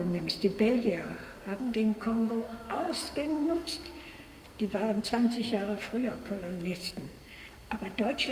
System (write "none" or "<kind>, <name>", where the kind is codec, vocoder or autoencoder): codec, SNAC